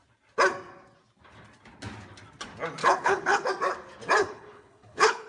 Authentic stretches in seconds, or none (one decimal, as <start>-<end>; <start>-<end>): 0.0-2.8; 3.5-4.2